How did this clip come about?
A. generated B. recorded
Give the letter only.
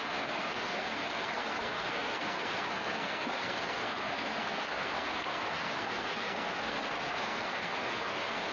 A